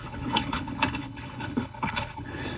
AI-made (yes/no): yes